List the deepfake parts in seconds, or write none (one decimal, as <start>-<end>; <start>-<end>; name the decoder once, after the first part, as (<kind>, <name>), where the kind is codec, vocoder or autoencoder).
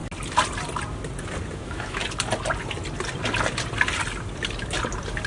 1.5-2.0 (autoencoder, DAC-VAE)